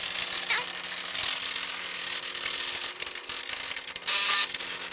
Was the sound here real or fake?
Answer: real